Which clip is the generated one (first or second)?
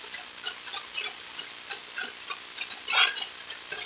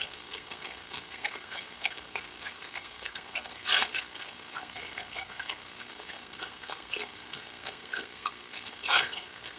second